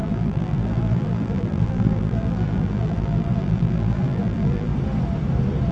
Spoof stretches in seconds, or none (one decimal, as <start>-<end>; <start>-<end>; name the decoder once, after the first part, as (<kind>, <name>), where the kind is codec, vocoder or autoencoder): 0.0-4.7 (vocoder, BigVGAN v2)